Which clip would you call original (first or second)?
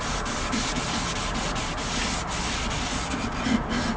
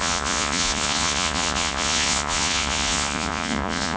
first